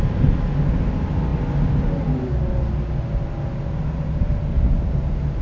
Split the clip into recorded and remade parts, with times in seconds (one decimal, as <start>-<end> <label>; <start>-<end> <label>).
0.0-5.4 recorded